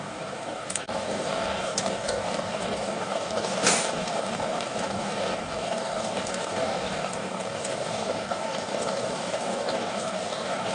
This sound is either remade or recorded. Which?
remade